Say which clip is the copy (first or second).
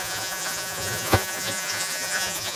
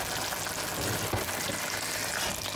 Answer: first